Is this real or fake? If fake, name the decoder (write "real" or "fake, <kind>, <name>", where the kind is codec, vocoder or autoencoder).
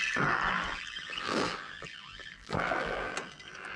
fake, vocoder, BigVGAN v2